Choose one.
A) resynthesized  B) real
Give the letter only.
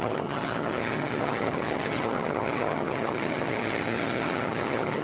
A